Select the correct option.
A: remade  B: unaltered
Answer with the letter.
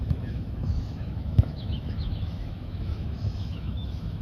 A